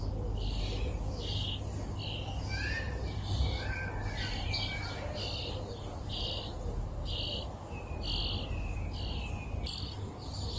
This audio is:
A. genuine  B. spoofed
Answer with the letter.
A